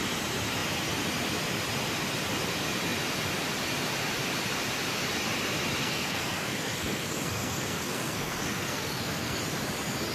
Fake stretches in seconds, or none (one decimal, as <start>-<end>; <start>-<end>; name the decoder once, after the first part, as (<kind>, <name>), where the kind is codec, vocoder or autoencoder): 5.8-9.4 (codec, SNAC)